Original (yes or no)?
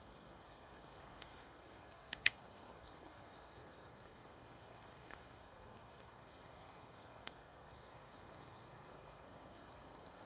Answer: no